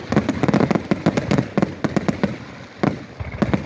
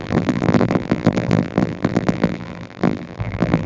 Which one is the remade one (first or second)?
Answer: second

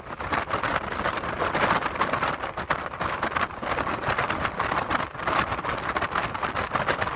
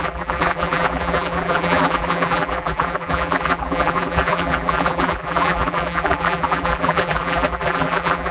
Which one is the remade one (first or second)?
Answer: second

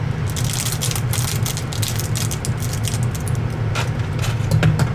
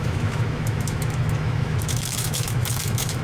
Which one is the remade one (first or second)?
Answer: second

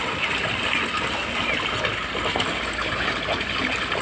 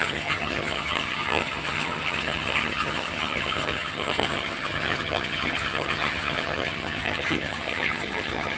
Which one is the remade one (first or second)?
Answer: second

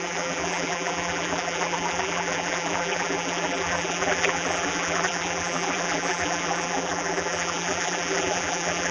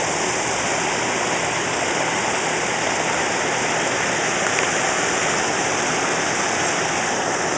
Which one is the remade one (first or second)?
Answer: first